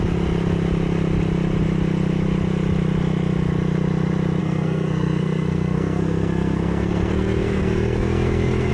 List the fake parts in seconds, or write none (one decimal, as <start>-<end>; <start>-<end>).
4.4-8.7